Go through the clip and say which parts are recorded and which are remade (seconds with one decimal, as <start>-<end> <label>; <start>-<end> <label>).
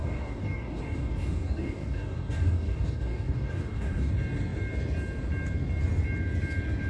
0.0-4.1 remade; 4.1-6.9 recorded